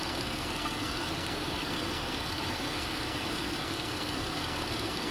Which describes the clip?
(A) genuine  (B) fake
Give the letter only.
B